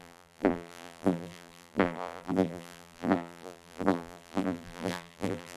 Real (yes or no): no